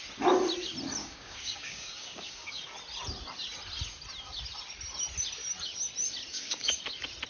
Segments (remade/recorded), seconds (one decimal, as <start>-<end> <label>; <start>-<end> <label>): 0.0-1.0 recorded; 1.0-2.6 remade; 2.6-6.3 recorded; 6.3-6.8 remade; 6.8-7.3 recorded